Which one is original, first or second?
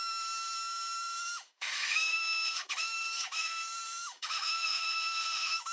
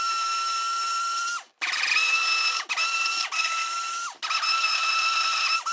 second